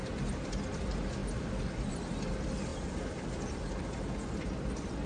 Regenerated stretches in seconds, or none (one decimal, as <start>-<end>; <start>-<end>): none